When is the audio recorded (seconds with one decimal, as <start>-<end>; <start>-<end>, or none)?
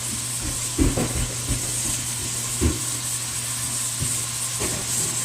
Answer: 0.0-5.2